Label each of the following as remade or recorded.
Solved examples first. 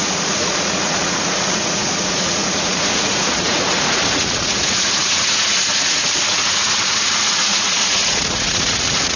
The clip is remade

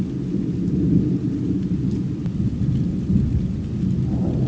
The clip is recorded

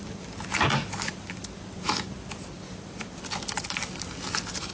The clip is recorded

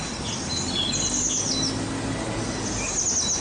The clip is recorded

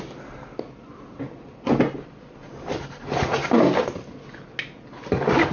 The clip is recorded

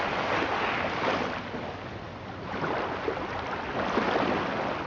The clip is recorded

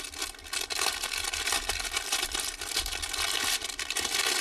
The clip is recorded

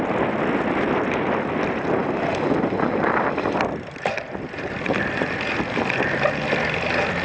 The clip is recorded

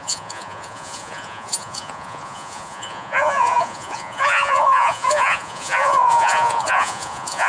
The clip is remade